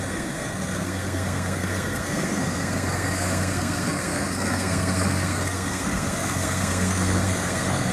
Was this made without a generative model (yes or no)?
no